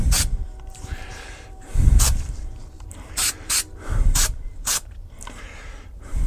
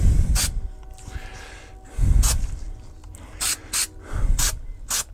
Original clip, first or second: second